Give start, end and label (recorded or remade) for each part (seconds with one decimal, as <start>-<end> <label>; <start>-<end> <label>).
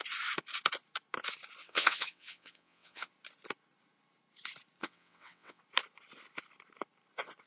0.0-1.6 recorded; 1.6-3.1 remade; 3.1-4.8 recorded; 4.8-5.6 remade; 5.6-7.5 recorded